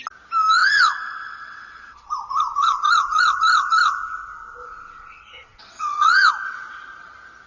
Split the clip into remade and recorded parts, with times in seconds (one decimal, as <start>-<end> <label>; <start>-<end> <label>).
0.0-0.6 recorded; 0.6-2.1 remade; 2.1-4.6 recorded; 4.6-6.3 remade; 6.3-7.5 recorded